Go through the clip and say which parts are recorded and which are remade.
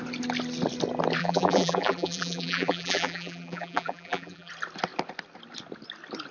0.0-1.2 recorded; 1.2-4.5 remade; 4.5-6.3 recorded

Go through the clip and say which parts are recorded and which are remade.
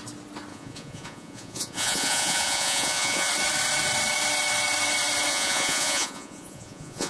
0.0-0.5 recorded; 0.5-3.3 remade; 3.3-5.3 recorded; 5.3-7.1 remade